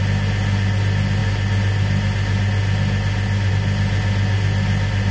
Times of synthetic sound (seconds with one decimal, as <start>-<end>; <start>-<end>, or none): none